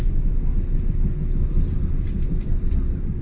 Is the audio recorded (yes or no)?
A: yes